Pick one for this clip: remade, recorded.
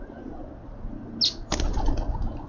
recorded